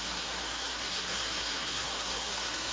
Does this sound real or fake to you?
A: fake